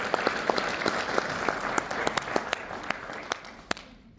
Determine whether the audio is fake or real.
real